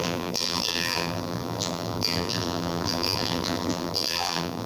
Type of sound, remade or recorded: remade